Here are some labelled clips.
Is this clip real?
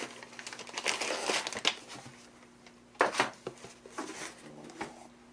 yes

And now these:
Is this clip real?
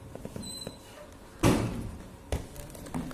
yes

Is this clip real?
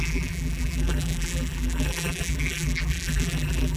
no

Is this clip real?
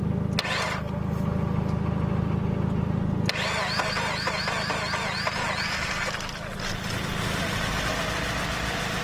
yes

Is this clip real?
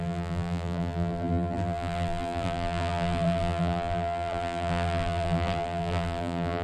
no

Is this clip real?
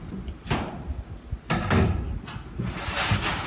yes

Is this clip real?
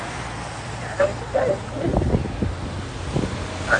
yes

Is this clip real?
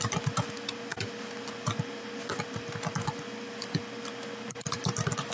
yes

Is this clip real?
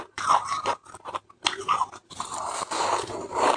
no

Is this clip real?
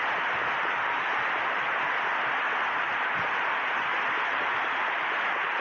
no